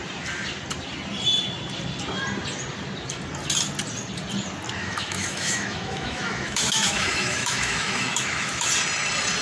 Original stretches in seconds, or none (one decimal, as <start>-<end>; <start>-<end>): 0.0-4.8; 8.7-9.4